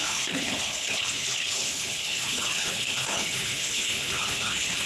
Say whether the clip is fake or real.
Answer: fake